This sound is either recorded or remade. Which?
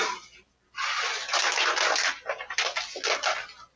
recorded